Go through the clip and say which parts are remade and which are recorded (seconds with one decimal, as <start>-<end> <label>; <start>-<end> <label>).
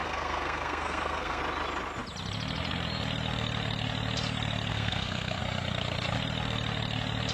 0.0-1.4 remade; 1.4-4.7 recorded; 4.7-5.4 remade; 5.4-7.3 recorded